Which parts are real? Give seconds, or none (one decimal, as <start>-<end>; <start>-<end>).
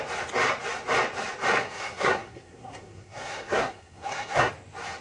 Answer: 0.0-1.5; 4.5-5.0